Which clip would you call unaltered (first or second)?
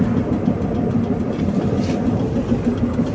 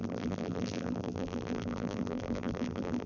first